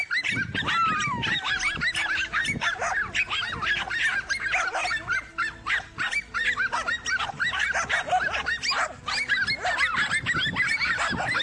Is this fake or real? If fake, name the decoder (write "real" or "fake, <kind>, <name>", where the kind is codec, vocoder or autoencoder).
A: real